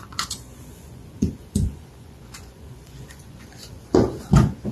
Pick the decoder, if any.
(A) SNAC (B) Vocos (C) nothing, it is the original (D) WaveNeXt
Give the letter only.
B